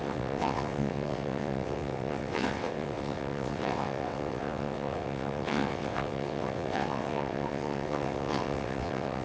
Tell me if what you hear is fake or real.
fake